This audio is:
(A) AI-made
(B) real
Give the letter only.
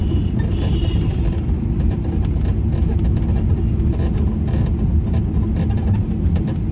B